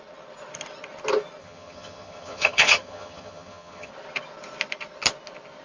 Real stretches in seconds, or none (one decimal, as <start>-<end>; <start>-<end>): 0.0-1.4; 3.9-5.6